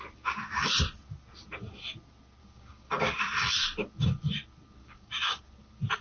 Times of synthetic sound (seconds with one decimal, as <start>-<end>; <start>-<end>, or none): 2.4-3.2; 4.8-5.4